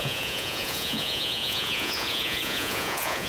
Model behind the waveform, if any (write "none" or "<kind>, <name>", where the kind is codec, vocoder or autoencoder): vocoder, Vocos